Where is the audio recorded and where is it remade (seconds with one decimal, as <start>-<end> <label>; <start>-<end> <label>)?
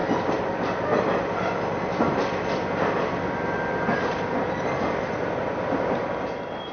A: 0.0-6.7 recorded